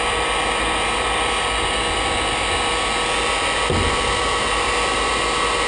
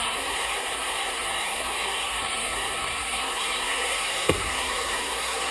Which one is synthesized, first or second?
second